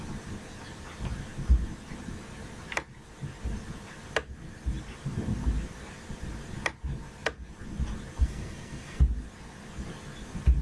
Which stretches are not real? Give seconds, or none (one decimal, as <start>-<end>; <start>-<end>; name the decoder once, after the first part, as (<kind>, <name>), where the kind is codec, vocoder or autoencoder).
8.2-9.0 (codec, SNAC)